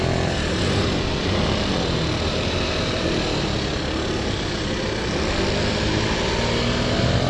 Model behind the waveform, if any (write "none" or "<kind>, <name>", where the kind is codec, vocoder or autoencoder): none